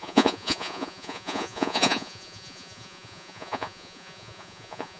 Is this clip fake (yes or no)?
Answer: yes